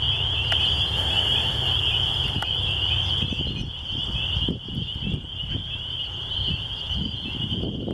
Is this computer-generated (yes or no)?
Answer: no